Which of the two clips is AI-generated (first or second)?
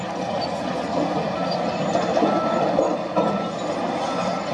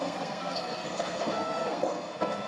second